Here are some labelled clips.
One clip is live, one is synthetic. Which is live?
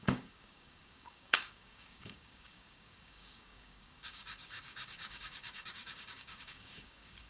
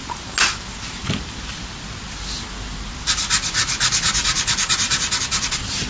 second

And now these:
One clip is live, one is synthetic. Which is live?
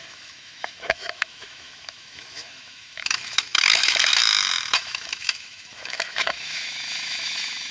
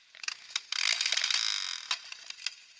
second